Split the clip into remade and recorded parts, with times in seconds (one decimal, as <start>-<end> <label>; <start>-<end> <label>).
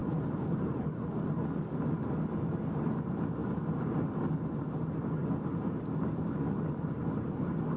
0.0-0.8 remade; 0.8-7.8 recorded